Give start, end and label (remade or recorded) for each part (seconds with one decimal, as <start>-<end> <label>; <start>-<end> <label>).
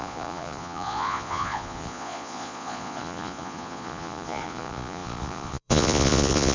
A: 0.0-6.5 remade